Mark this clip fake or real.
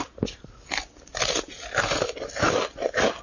real